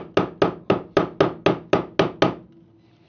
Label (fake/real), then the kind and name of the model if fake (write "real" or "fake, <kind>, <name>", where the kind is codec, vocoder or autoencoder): real